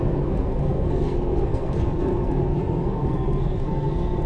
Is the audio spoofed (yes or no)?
yes